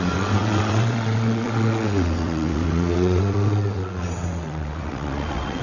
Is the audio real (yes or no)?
no